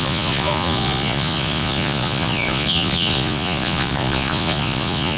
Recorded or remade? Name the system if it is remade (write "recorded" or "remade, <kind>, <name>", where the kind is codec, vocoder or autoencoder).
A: remade, vocoder, Vocos